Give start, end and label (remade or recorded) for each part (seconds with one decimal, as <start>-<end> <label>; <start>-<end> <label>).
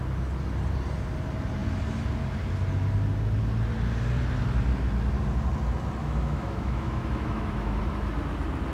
0.0-6.0 recorded; 6.0-7.8 remade; 7.8-8.7 recorded